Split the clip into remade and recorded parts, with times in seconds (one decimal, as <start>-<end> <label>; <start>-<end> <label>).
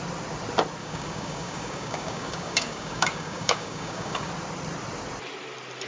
0.0-0.8 recorded; 0.8-4.3 remade; 4.3-5.9 recorded